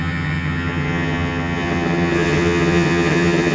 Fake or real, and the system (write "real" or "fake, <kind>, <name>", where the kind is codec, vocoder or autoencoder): fake, vocoder, HiFi-GAN